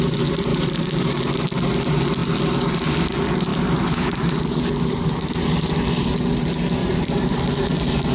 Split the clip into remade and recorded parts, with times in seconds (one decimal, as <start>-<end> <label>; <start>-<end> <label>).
0.0-0.5 recorded; 0.5-1.2 remade; 1.2-3.5 recorded; 3.5-4.2 remade; 4.2-6.8 recorded; 6.8-8.1 remade